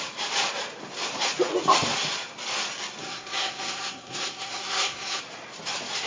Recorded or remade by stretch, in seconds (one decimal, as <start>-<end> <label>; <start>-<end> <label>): 0.0-3.0 recorded; 3.0-5.2 remade; 5.2-6.1 recorded